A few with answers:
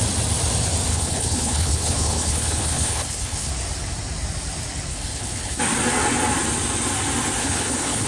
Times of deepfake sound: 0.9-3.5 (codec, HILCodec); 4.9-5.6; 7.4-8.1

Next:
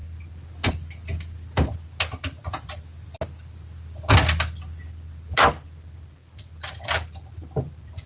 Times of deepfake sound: none

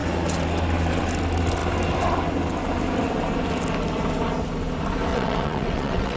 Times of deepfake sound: 5.1-6.2 (vocoder, WaveNeXt)

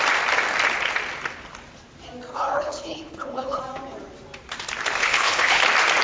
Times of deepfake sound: 2.3-3.6 (codec, HILCodec); 5.0-5.6

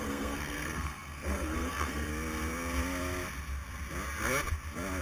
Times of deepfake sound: 0.0-2.1 (codec, SNAC)

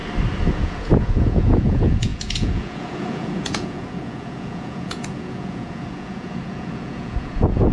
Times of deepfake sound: 0.6-7.7 (vocoder, Vocos)

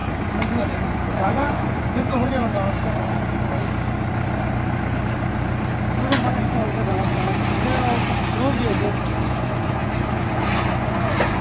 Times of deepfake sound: 0.6-2.5 (vocoder, Vocos); 6.3-7.3; 8.7-11.4